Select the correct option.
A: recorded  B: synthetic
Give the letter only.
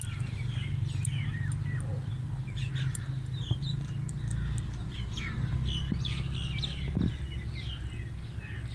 A